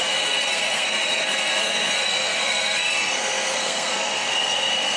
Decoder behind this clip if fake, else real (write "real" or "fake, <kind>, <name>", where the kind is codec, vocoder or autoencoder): fake, codec, SNAC